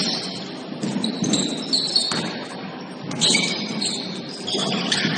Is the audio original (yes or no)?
yes